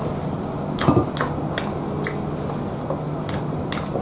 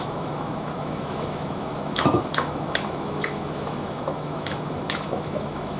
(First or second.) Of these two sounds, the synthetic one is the second